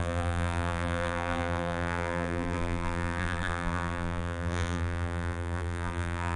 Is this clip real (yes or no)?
no